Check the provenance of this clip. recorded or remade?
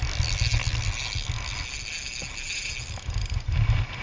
recorded